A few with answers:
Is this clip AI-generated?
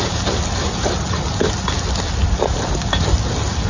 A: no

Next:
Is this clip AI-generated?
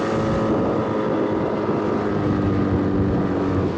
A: no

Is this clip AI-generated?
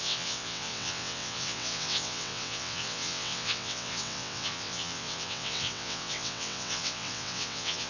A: yes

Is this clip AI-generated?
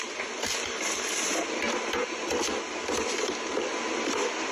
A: no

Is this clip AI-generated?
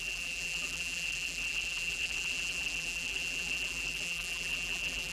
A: yes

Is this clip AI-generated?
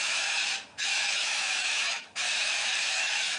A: yes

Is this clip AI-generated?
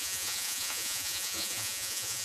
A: yes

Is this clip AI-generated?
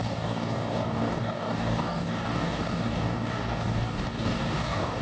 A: yes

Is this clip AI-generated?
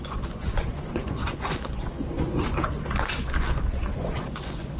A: yes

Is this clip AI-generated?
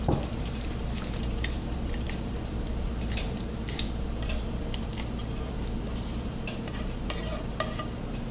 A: yes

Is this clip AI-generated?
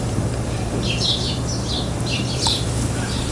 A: yes